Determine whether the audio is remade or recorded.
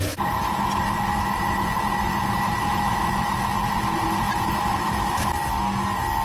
recorded